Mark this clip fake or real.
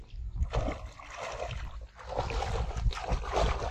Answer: real